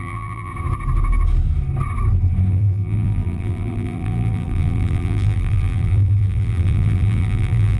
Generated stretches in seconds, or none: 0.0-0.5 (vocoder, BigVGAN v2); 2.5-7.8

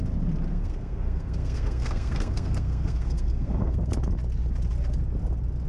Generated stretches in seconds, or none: 0.5-3.9 (codec, SNAC)

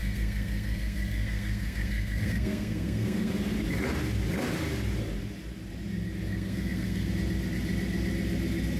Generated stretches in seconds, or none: 0.0-3.3 (codec, SNAC); 6.3-7.1

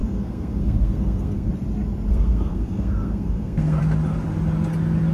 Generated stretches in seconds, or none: 0.0-1.5 (codec, SNAC); 2.1-3.8

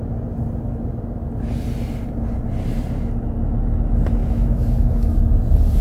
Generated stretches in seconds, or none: 4.2-5.2 (autoencoder, DAC-VAE)

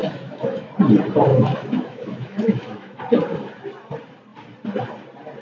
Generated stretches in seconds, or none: 0.0-0.7 (autoencoder, DAC-VAE); 1.3-3.0